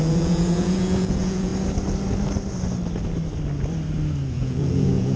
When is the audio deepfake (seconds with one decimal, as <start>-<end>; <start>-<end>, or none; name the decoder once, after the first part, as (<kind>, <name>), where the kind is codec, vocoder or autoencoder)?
0.0-1.5 (vocoder, Vocos); 4.3-5.2

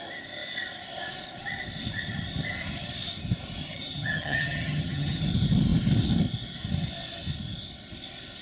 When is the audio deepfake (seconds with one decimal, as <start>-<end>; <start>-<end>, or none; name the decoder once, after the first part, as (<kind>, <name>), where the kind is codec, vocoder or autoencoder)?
3.6-5.2 (vocoder, HiFi-GAN)

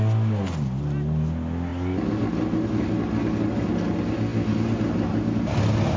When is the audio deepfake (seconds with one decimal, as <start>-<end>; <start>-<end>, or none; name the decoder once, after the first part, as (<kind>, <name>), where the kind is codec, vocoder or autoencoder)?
none

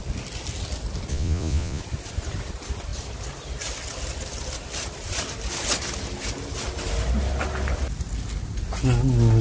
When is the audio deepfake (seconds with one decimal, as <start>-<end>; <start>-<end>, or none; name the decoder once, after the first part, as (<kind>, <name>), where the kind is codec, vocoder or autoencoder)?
1.1-1.8 (vocoder, Vocos)

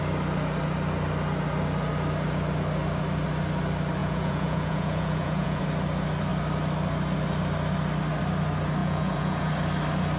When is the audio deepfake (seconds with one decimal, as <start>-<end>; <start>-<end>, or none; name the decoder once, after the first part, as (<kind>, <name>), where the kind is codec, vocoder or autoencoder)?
4.0-5.6 (vocoder, Vocos); 8.8-9.5

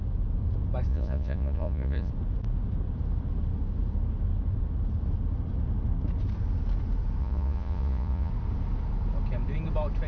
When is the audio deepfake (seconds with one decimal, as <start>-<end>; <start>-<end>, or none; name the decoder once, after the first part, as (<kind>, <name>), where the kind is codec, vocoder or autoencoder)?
0.9-2.1 (vocoder, Vocos); 7.2-8.3

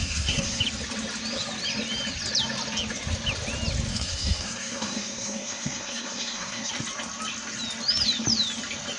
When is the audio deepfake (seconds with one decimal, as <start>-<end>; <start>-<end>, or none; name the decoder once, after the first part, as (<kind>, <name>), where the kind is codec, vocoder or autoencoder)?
0.0-0.6 (codec, SNAC); 3.9-6.7